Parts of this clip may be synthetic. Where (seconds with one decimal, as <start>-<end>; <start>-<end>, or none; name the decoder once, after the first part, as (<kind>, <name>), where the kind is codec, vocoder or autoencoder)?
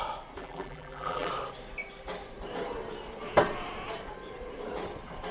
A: 0.4-1.3 (vocoder, BigVGAN v2)